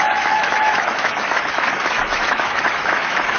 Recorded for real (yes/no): no